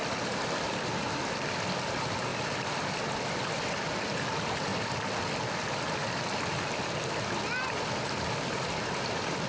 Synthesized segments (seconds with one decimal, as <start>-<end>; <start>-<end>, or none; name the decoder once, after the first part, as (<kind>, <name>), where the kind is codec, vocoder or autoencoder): none